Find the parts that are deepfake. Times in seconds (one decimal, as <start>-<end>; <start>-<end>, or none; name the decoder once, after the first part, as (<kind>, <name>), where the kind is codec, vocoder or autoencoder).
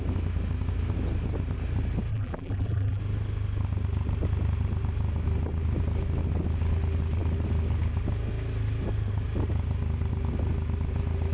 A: 2.1-3.0 (vocoder, BigVGAN v2)